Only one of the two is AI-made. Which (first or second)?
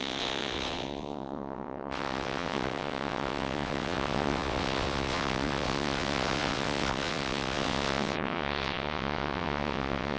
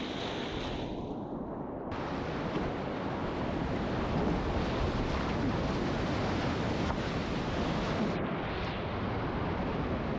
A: first